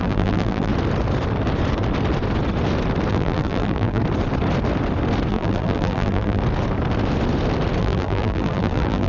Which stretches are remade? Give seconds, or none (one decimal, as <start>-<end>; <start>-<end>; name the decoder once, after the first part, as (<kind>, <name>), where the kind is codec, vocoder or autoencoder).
0.0-0.7 (vocoder, BigVGAN v2); 3.1-4.0; 5.3-6.4; 7.8-9.1